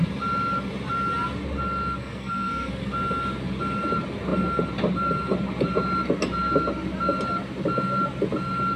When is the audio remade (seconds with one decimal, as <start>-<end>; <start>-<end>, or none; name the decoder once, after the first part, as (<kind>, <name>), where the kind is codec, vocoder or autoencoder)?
2.0-2.7 (codec, SNAC)